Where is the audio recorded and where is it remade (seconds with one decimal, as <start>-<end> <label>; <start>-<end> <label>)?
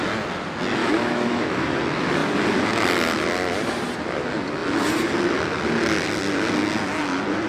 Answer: 0.0-0.8 recorded; 0.8-1.8 remade; 1.8-7.5 recorded